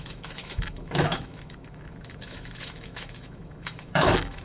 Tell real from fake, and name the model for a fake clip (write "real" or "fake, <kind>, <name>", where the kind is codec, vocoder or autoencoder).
fake, autoencoder, DAC-VAE